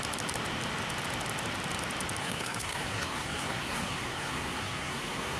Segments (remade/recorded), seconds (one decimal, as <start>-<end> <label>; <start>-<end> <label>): 0.0-2.2 recorded; 2.2-5.4 remade